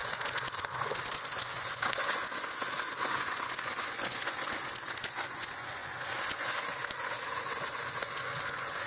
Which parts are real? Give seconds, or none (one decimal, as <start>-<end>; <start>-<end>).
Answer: none